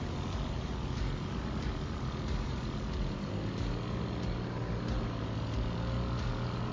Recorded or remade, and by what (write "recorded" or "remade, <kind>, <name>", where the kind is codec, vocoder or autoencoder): recorded